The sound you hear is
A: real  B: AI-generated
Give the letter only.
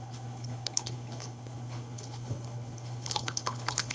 B